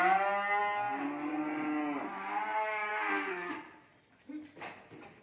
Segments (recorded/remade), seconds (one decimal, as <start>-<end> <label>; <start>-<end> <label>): 0.0-2.9 recorded; 2.9-3.5 remade; 3.5-5.2 recorded